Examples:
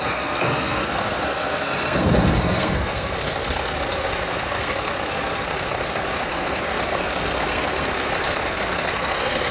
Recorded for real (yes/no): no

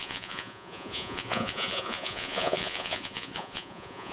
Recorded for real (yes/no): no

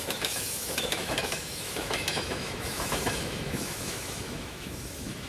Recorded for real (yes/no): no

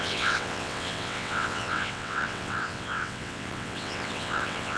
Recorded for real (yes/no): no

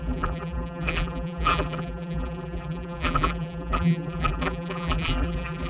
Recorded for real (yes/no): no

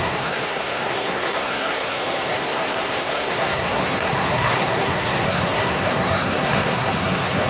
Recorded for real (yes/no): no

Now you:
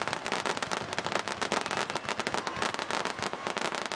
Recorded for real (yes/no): yes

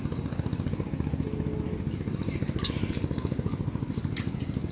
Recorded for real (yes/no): yes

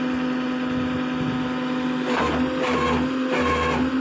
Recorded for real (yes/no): yes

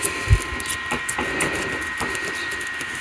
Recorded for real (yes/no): yes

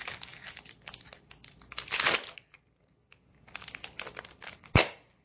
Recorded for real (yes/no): yes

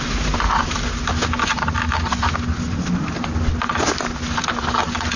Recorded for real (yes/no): yes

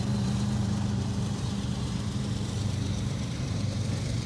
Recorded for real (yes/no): no